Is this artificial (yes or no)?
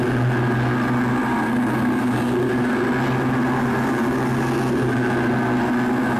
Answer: no